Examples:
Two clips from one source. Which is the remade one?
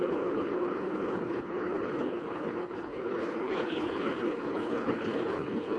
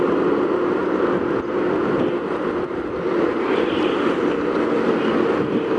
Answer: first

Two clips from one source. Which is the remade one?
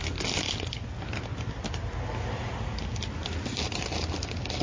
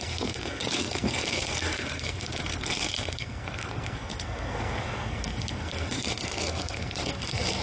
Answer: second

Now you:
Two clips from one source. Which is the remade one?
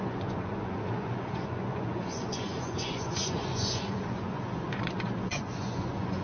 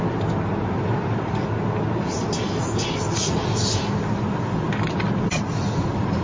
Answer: first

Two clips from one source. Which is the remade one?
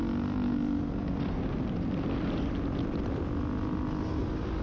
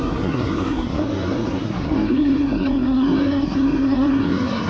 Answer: second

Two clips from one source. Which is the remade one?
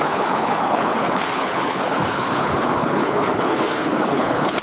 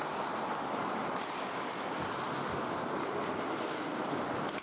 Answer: first